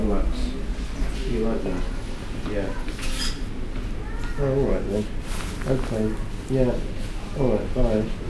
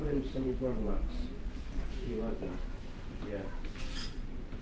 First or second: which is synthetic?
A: second